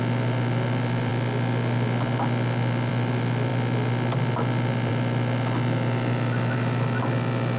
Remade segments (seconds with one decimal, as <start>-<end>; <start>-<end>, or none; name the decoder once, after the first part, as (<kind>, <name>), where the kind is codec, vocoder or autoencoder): none